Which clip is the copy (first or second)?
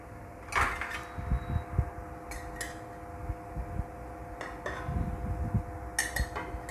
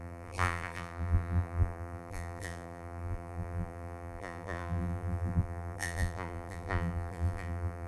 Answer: second